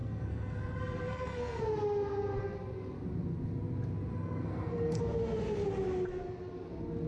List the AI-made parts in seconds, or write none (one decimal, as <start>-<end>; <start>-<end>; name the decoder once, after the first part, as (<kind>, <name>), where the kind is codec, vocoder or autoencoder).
0.0-1.6 (codec, SNAC); 4.1-5.0